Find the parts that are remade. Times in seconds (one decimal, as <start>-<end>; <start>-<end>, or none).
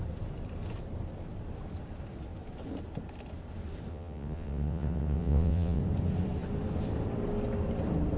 3.9-5.8